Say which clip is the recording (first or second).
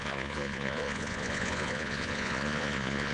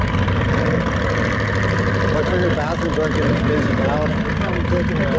second